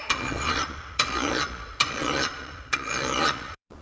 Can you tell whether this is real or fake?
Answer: fake